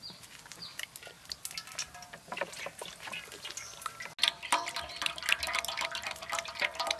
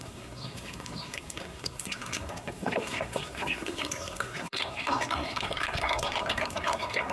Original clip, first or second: first